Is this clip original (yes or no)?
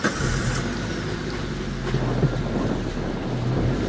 yes